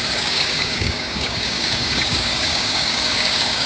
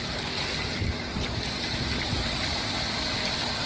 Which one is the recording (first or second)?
second